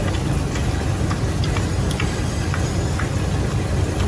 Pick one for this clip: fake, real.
real